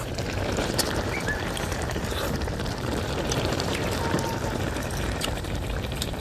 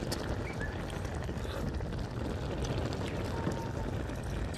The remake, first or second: first